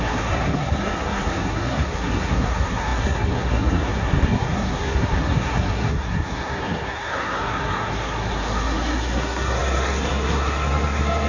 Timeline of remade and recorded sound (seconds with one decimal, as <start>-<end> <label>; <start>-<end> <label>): 0.0-11.3 remade